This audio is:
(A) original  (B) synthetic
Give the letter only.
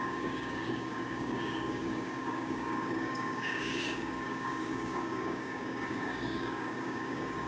B